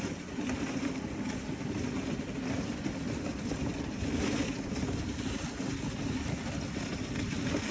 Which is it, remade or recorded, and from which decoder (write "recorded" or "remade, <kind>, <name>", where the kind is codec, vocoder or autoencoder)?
recorded